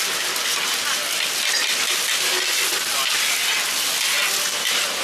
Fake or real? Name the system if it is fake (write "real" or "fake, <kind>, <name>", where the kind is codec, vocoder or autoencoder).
real